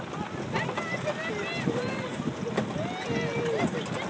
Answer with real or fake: real